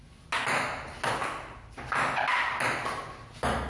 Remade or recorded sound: recorded